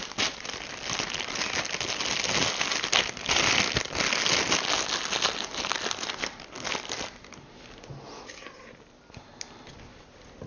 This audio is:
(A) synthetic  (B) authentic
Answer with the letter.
B